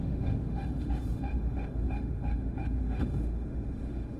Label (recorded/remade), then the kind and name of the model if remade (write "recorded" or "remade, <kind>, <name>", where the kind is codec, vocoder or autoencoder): remade, autoencoder, DAC-VAE